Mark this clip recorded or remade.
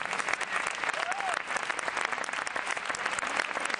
recorded